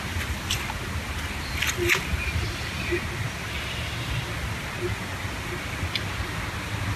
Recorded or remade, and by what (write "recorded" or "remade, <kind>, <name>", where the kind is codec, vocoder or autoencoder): recorded